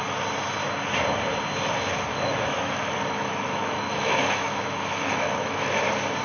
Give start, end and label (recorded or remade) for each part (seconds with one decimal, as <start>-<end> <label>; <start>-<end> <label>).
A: 0.0-2.1 recorded; 2.1-5.8 remade; 5.8-6.2 recorded